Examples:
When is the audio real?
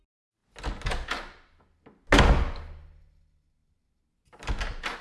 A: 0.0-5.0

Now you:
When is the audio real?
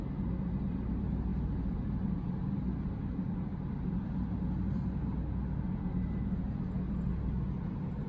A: 0.0-8.1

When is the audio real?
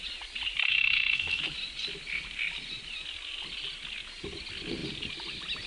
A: 0.0-0.7; 1.4-5.7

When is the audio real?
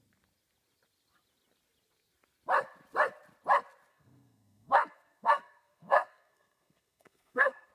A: 0.0-3.9